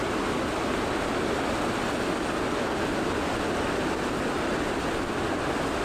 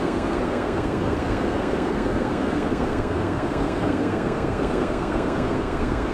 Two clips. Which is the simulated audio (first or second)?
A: second